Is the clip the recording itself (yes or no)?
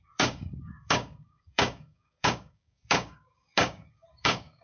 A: no